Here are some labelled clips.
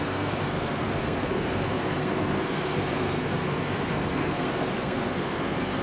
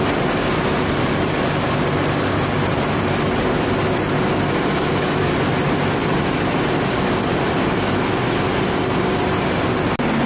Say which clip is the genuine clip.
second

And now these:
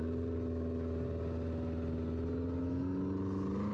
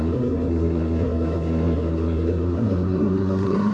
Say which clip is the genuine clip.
first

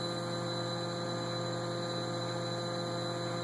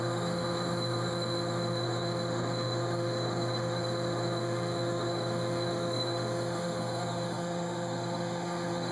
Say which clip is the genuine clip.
first